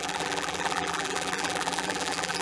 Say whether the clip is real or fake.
fake